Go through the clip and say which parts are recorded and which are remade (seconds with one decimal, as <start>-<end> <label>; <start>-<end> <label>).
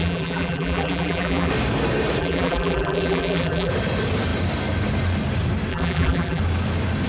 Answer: 0.0-1.5 remade; 1.5-2.2 recorded; 2.2-3.7 remade; 3.7-5.7 recorded; 5.7-6.4 remade; 6.4-7.1 recorded